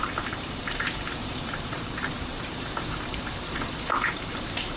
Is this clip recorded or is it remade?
remade